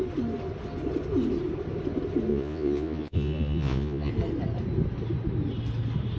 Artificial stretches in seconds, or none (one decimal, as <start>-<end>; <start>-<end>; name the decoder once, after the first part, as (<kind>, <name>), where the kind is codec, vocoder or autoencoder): 2.3-4.1 (vocoder, Vocos)